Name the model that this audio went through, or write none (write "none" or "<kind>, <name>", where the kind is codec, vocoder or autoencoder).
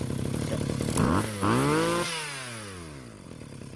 none